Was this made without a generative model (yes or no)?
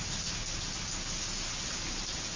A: yes